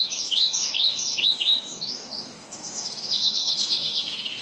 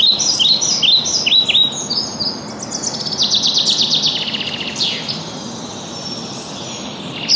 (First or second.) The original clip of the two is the second